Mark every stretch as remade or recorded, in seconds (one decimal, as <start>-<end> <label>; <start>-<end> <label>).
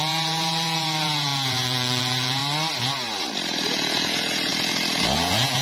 0.0-2.4 remade; 2.4-3.7 recorded; 3.7-4.5 remade; 4.5-5.0 recorded; 5.0-5.6 remade